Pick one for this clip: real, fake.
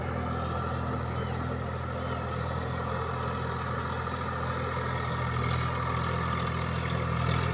real